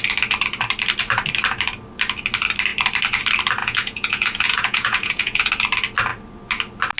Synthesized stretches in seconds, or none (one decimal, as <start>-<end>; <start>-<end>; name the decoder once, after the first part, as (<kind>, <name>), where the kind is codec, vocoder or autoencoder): 3.6-5.5 (vocoder, Vocos)